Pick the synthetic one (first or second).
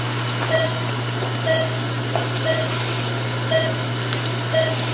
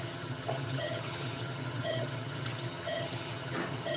second